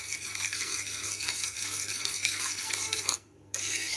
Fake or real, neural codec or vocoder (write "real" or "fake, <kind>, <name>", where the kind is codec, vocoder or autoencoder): fake, codec, SNAC